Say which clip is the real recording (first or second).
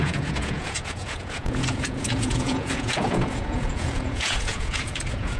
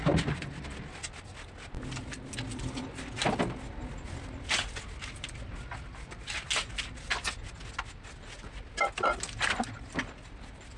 second